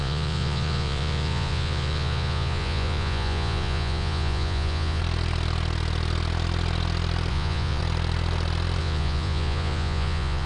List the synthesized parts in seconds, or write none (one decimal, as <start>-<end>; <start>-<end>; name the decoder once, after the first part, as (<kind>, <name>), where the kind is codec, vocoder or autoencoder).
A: 0.0-5.0 (vocoder, Vocos); 7.3-7.8; 8.8-10.5